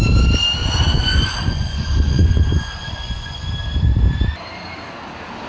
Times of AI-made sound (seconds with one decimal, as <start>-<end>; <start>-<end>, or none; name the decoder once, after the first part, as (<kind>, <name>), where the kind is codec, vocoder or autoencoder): 0.6-3.5 (vocoder, Vocos)